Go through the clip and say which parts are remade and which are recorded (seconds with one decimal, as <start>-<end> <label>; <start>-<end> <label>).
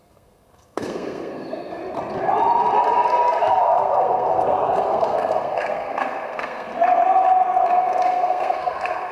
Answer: 0.0-1.8 remade; 1.8-3.4 recorded; 3.4-6.7 remade; 6.7-7.8 recorded; 7.8-9.1 remade